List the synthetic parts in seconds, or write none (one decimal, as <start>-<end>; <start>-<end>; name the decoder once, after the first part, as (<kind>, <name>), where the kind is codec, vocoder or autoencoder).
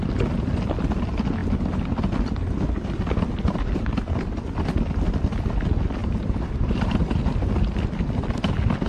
6.0-7.2 (vocoder, BigVGAN v2)